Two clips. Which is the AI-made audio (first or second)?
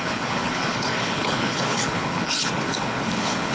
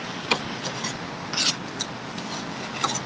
first